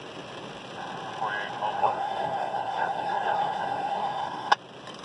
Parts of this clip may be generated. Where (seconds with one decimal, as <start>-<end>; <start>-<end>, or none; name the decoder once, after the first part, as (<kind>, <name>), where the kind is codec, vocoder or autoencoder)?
1.8-4.5 (codec, SNAC)